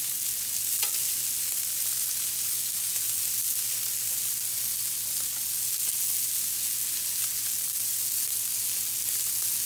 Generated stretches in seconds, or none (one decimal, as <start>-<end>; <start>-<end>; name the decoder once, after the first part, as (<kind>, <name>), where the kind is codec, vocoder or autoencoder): none